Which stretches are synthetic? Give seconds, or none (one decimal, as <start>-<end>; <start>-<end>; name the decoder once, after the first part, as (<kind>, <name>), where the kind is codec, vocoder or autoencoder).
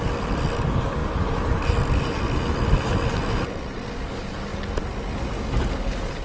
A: none